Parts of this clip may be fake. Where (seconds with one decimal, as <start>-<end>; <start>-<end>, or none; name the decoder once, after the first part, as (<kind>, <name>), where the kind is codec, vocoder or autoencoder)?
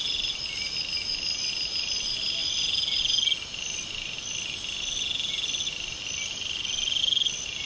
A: none